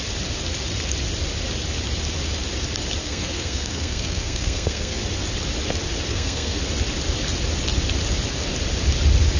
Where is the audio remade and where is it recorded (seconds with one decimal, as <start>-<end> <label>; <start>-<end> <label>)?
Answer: 0.0-3.0 recorded; 3.0-5.0 remade; 5.0-6.1 recorded; 6.1-6.6 remade; 6.6-9.4 recorded